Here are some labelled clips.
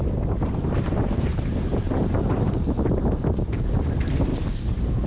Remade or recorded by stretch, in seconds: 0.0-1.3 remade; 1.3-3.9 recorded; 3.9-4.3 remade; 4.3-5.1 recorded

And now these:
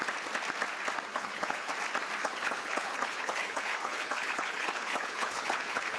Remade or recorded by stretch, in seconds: 0.0-1.1 recorded; 1.1-1.7 remade; 1.7-2.2 recorded; 2.2-6.0 remade

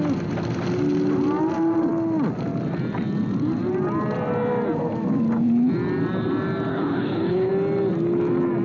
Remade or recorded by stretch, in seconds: 0.0-6.7 recorded; 6.7-7.5 remade; 7.5-8.6 recorded

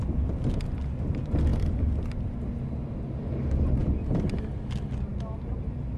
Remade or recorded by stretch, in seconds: 0.0-6.0 recorded

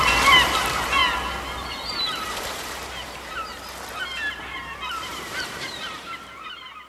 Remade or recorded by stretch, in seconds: 0.0-1.0 remade; 1.0-2.7 recorded; 2.7-3.5 remade; 3.5-4.4 recorded; 4.4-6.9 remade